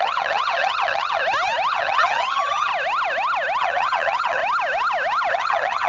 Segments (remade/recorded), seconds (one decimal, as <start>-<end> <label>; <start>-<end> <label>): 0.0-1.2 remade; 1.2-1.7 recorded; 1.7-2.7 remade; 2.7-3.6 recorded; 3.6-4.4 remade; 4.4-5.3 recorded; 5.3-5.9 remade